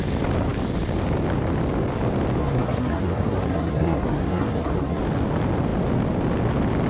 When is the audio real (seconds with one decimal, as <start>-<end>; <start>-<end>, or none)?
0.0-2.4; 5.0-6.9